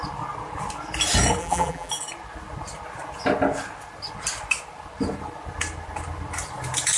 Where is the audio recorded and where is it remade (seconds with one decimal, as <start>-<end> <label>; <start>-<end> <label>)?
0.0-1.4 recorded; 1.4-1.9 remade; 1.9-7.0 recorded